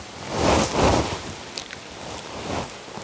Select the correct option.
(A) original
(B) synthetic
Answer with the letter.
A